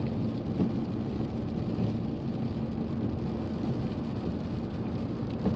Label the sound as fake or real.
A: real